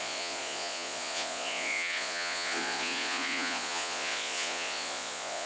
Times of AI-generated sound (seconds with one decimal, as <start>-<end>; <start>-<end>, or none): 0.0-5.5